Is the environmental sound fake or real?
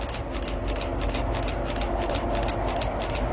real